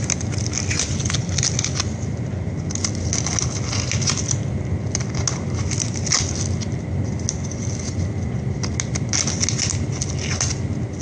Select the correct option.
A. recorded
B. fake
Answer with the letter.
A